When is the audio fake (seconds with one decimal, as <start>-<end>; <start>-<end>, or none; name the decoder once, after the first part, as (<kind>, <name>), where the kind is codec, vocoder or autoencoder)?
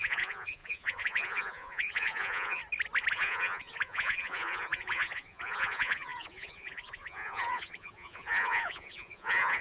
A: 0.0-2.6 (vocoder, Vocos); 3.1-9.6